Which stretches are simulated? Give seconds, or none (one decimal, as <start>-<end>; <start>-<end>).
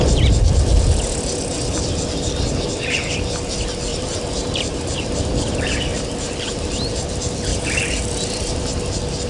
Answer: 3.9-5.3; 5.9-6.9; 7.5-8.6